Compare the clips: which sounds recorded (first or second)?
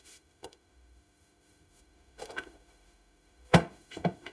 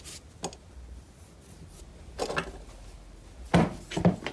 second